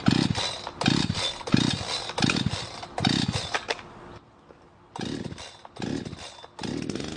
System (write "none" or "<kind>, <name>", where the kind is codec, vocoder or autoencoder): none